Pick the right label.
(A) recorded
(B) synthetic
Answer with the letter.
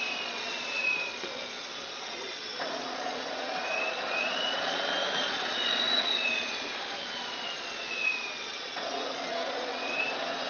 B